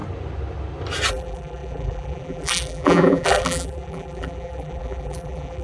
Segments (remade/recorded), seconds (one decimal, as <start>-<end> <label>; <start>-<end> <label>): 0.0-1.1 recorded; 1.1-5.6 remade